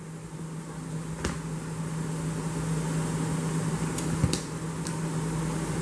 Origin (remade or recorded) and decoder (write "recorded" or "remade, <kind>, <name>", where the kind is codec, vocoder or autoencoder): recorded